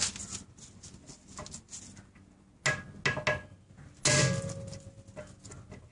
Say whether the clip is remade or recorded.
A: recorded